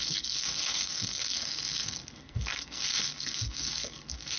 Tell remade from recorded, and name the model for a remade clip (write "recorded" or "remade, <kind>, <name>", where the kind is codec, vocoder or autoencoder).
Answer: remade, codec, SNAC